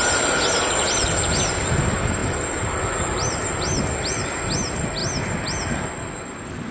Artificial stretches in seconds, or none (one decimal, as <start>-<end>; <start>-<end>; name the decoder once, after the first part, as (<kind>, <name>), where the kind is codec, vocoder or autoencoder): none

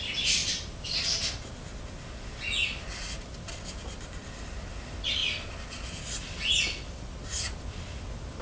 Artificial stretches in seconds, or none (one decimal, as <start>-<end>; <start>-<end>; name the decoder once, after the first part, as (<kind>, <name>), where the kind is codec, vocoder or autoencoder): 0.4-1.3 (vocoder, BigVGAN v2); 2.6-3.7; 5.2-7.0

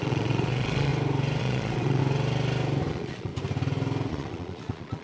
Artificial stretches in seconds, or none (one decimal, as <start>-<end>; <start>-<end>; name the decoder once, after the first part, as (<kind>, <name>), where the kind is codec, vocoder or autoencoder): 0.0-0.9 (vocoder, Vocos); 1.4-2.0; 2.9-3.3; 4.1-5.0